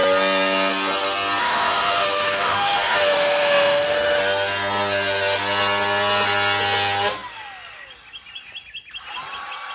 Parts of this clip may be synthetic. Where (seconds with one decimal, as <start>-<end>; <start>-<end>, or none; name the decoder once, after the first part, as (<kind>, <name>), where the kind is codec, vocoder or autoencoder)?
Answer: 1.4-4.2 (autoencoder, DAC-VAE)